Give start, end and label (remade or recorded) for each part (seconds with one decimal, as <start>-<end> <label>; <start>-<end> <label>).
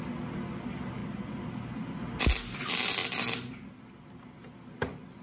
0.0-1.0 recorded; 1.0-2.0 remade; 2.0-3.0 recorded; 3.0-3.8 remade; 3.8-5.2 recorded